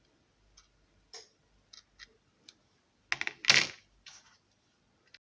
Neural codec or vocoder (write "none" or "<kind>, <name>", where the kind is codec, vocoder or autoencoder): none